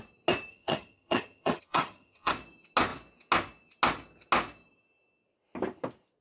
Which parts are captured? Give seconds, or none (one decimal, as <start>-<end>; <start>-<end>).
0.0-0.5; 2.3-6.2